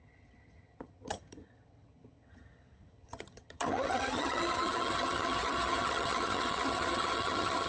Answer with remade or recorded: remade